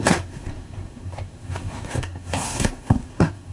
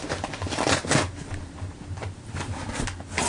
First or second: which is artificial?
first